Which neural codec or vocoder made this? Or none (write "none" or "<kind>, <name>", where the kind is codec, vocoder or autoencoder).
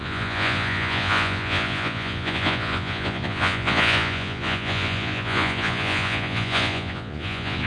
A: vocoder, Vocos